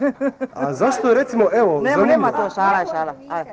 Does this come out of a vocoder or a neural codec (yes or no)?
no